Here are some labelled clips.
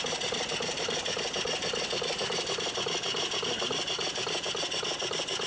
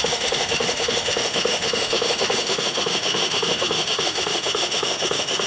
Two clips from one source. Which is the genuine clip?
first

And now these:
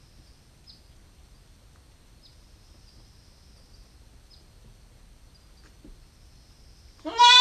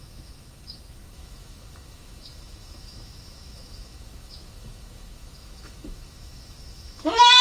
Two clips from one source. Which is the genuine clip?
first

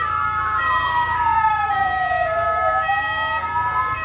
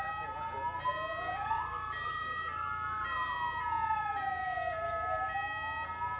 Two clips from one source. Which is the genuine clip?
second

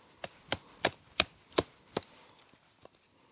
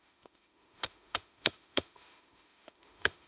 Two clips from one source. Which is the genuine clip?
first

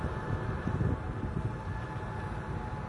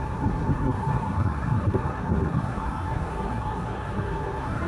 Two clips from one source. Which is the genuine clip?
first